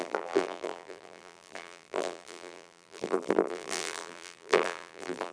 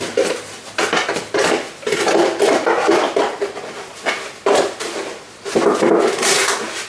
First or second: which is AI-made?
first